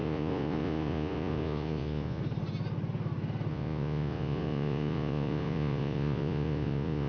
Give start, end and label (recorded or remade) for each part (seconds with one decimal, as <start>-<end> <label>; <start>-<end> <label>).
0.0-2.2 remade; 2.2-3.5 recorded; 3.5-7.1 remade